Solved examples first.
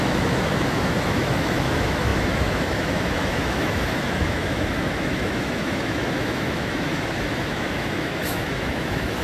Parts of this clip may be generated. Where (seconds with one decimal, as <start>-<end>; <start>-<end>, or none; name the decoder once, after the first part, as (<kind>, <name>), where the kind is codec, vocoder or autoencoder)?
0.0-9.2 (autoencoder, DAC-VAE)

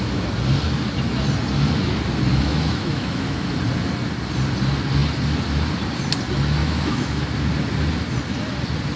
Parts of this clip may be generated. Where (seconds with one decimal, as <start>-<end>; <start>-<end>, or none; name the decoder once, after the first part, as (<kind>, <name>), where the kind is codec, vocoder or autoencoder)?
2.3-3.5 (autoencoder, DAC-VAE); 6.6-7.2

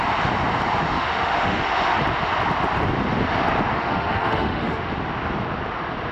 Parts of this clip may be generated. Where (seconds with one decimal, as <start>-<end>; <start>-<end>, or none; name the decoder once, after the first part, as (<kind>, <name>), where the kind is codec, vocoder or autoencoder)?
0.8-2.0 (autoencoder, DAC-VAE); 3.7-4.9